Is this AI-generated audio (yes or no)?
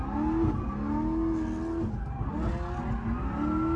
no